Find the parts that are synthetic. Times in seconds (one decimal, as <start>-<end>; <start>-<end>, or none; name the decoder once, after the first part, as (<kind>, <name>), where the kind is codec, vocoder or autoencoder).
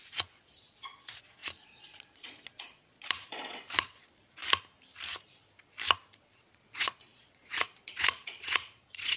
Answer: 0.0-4.4 (vocoder, Vocos); 6.2-9.2